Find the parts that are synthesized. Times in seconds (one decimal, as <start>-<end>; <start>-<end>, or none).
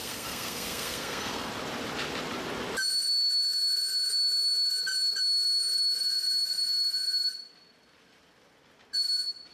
0.0-1.5